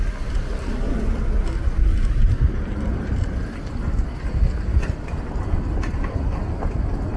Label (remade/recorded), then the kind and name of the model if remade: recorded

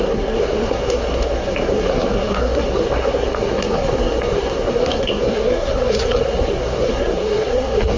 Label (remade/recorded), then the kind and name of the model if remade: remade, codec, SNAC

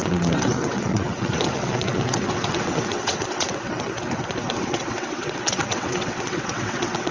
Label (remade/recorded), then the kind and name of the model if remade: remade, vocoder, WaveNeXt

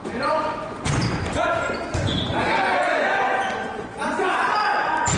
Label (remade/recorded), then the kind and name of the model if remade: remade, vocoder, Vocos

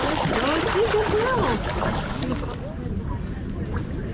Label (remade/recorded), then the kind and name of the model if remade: recorded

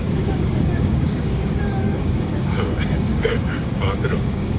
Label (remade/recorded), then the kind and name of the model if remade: remade, codec, DAC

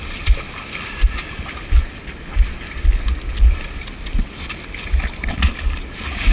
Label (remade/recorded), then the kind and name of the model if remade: recorded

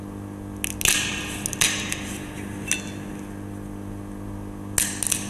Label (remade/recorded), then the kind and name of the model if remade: recorded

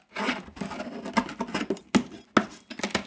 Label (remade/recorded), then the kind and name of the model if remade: recorded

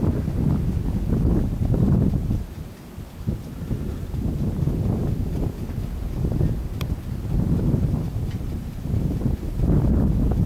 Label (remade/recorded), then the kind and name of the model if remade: recorded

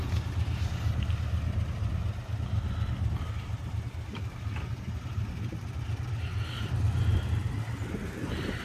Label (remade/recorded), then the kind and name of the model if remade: recorded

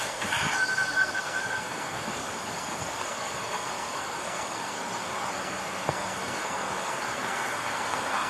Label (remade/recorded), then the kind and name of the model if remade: remade, codec, SNAC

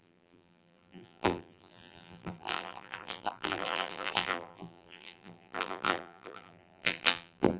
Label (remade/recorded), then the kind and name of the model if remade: remade, vocoder, BigVGAN v2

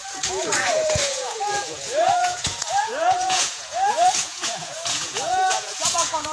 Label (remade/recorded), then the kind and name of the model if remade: remade, vocoder, Vocos